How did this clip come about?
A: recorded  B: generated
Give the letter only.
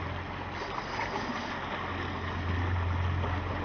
A